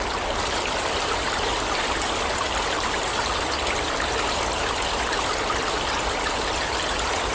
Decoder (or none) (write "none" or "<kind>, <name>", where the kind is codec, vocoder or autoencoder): none